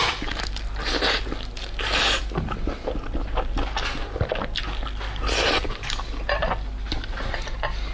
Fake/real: real